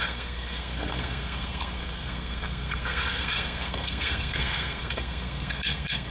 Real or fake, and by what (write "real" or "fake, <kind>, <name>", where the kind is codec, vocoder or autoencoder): fake, codec, SNAC